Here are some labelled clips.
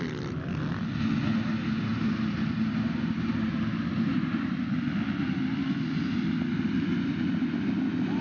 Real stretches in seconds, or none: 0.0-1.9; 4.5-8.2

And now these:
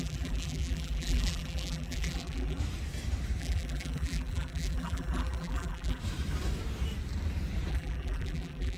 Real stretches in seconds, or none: 2.6-3.4; 6.0-7.7

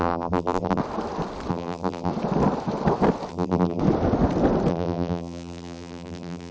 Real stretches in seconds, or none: 0.8-1.5; 2.1-3.3; 3.8-4.7